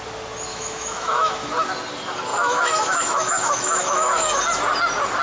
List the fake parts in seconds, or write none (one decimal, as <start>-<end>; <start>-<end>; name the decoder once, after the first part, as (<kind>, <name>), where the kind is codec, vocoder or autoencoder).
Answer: 0.5-1.5 (autoencoder, DAC-VAE); 2.3-4.4